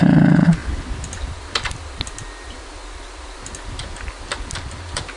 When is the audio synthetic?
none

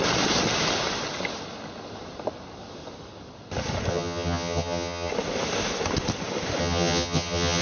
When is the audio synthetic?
3.9-5.1; 6.6-7.6

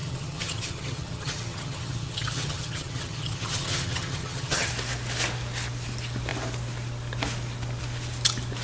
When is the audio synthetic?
0.0-4.7

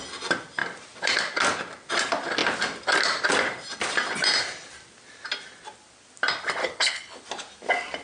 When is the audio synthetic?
6.6-7.2

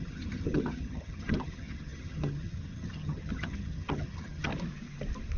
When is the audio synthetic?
0.0-4.5